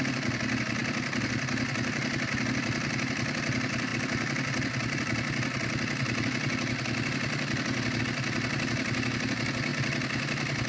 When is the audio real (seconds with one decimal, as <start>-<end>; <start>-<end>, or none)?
0.0-10.7